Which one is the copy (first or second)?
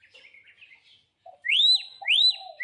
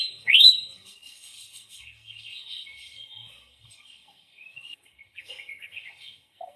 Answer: second